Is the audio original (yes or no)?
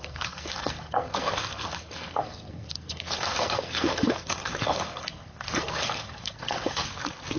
no